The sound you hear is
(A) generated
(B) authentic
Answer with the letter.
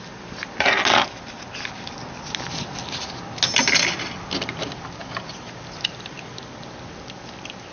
B